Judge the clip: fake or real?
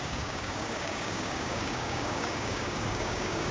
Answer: fake